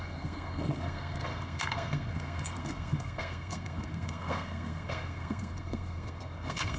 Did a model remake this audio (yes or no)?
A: yes